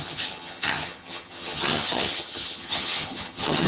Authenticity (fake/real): fake